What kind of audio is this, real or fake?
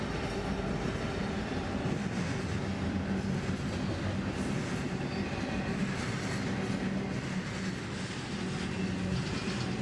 real